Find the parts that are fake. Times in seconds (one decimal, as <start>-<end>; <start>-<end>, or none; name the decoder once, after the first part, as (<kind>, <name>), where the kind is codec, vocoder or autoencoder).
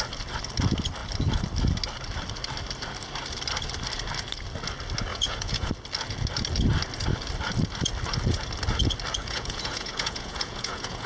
5.1-5.7 (vocoder, Vocos); 9.2-11.1